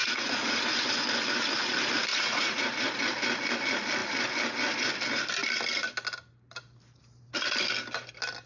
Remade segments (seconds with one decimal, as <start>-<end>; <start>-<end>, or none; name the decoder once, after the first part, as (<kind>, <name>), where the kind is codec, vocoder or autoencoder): 0.0-0.6 (vocoder, Vocos); 2.1-2.7